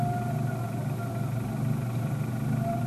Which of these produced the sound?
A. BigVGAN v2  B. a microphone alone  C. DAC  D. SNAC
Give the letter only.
B